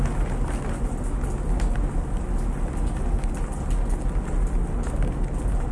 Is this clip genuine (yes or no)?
yes